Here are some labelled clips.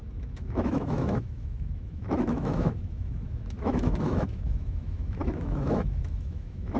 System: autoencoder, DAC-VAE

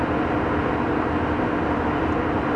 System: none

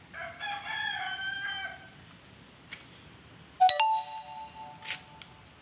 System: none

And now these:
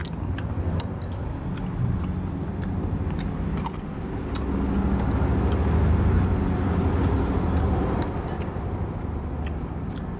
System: none